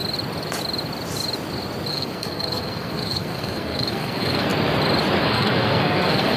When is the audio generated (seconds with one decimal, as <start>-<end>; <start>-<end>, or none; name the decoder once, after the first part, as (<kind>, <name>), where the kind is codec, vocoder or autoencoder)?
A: 1.9-4.5 (codec, SNAC); 5.2-6.4